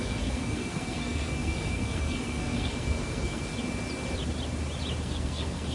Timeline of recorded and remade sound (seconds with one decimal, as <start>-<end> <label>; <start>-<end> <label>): 0.0-3.5 remade; 3.5-5.0 recorded; 5.0-5.7 remade